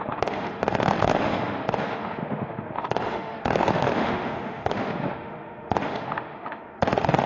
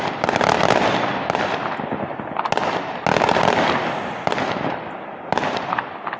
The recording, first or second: second